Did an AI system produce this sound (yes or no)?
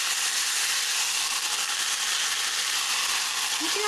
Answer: no